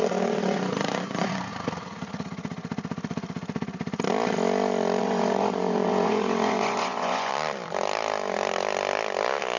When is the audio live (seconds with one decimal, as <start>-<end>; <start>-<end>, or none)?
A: 1.5-5.0; 7.3-9.6

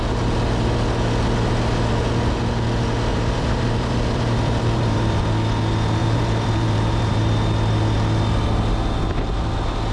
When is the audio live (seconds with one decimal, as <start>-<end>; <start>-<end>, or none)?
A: 0.0-3.1; 5.2-6.0; 7.3-9.9

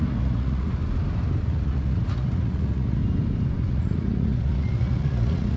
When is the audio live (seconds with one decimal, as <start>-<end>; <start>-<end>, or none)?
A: 0.8-1.4; 3.0-3.7

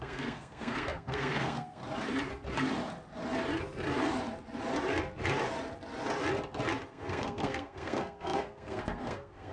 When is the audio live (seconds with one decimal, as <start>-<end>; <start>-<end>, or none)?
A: 1.8-6.9